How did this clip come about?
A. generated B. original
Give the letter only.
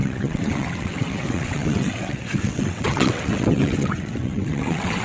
A